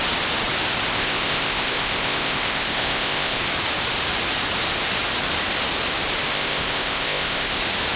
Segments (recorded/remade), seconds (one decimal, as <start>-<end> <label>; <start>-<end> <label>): 0.0-0.9 recorded; 0.9-3.4 remade; 3.4-6.3 recorded; 6.3-7.6 remade; 7.6-8.0 recorded